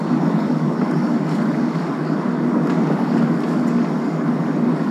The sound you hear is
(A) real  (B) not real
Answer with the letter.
B